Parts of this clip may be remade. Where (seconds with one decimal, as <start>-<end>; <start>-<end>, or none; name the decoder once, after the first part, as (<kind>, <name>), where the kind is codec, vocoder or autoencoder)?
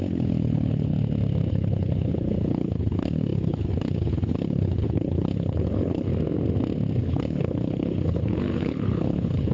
0.0-0.9 (codec, HILCodec); 1.5-6.1; 7.0-9.5